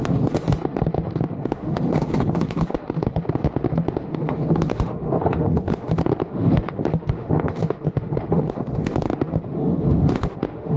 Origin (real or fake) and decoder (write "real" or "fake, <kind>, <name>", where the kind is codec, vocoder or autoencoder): fake, autoencoder, DAC-VAE